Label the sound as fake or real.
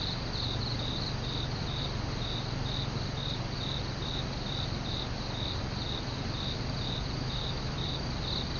real